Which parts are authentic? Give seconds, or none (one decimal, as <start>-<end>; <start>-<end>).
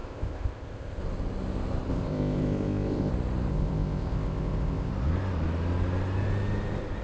1.0-1.9; 3.1-3.5; 4.9-7.0